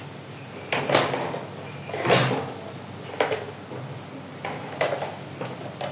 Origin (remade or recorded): recorded